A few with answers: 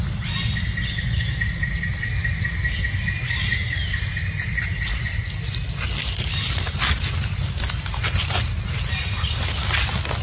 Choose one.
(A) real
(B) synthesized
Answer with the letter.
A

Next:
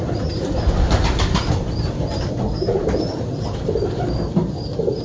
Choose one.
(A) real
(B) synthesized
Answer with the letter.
A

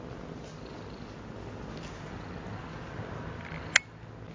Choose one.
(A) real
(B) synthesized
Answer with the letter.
A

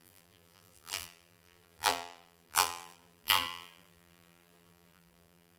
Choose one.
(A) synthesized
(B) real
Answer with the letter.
A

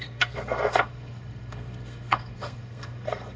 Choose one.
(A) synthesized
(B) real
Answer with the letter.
A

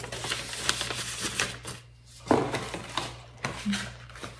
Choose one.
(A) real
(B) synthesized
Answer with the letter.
A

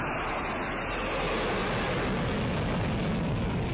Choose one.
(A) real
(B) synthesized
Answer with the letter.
A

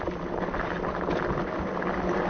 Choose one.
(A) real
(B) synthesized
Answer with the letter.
A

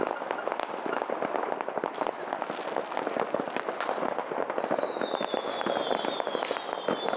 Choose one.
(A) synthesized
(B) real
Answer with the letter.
B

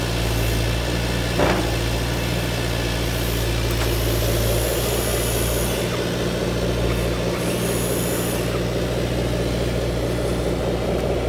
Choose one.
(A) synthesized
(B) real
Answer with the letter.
B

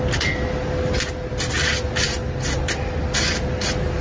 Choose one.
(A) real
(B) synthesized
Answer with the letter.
A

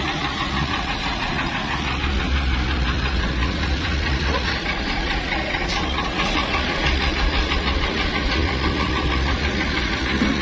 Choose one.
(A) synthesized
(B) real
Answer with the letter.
A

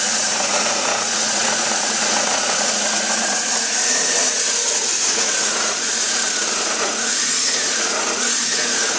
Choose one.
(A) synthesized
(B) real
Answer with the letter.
A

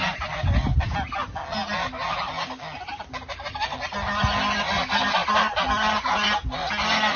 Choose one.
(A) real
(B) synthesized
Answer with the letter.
A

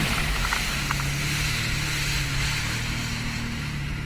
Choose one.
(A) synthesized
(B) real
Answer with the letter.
B